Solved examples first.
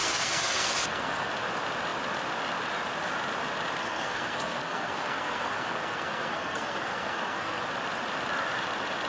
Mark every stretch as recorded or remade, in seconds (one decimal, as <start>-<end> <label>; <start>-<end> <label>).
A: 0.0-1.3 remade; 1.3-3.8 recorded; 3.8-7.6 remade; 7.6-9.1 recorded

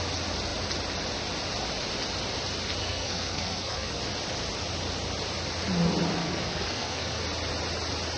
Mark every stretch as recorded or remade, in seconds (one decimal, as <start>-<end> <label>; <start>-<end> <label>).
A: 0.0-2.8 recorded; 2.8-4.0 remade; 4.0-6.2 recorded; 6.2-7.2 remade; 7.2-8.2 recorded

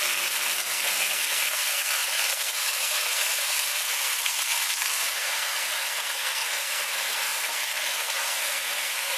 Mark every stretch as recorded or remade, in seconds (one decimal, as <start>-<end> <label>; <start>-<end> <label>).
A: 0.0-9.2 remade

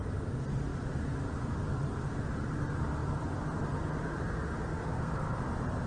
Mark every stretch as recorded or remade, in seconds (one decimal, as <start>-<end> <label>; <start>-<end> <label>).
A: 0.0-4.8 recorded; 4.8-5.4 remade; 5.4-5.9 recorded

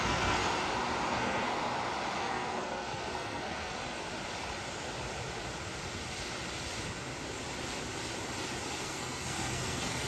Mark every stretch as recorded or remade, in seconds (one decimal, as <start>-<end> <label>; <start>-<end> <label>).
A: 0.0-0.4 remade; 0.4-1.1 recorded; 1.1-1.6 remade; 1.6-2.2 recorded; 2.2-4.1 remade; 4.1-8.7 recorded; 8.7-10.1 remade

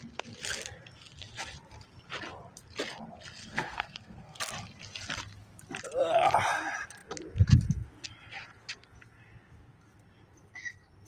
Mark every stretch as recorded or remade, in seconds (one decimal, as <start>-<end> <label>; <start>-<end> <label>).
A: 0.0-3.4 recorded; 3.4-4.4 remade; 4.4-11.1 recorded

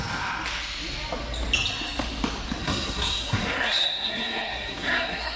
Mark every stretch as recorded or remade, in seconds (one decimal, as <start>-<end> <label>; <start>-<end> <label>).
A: 0.0-2.6 recorded; 2.6-5.4 remade